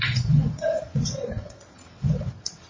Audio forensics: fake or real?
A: fake